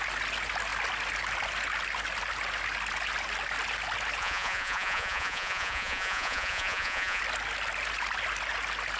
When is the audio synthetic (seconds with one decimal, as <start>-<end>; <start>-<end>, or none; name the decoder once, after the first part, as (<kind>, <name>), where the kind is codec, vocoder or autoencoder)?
4.2-7.2 (vocoder, Vocos)